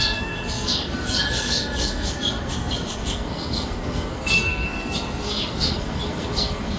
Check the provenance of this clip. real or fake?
fake